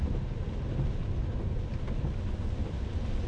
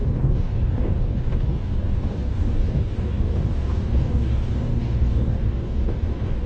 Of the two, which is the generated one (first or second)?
second